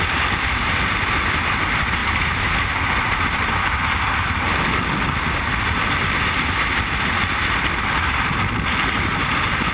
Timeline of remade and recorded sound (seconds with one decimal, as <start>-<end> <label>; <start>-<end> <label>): 0.0-2.0 recorded; 2.0-2.5 remade; 2.5-9.7 recorded